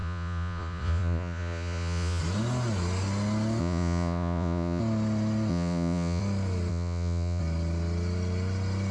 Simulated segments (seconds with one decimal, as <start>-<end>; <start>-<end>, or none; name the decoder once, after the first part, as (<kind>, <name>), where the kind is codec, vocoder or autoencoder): 0.0-2.2 (vocoder, Vocos); 3.6-4.8; 5.5-6.2; 6.7-7.4